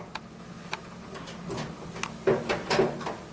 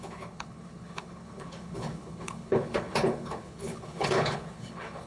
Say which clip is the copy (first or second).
second